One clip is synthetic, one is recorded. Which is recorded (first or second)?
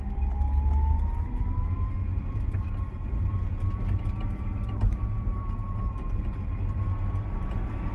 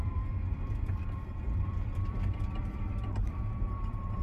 first